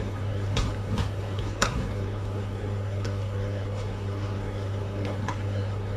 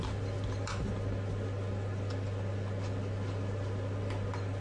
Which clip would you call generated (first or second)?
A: first